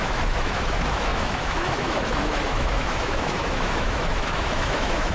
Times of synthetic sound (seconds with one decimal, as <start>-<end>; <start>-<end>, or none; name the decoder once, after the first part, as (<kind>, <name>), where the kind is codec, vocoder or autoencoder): 0.0-5.1 (autoencoder, DAC-VAE)